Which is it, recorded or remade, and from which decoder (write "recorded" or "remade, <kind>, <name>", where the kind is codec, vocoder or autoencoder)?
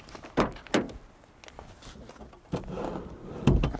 recorded